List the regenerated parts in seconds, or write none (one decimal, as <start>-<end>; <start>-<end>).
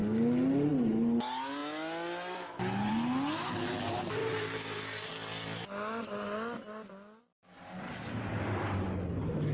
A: none